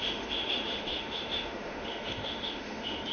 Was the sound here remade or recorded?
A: remade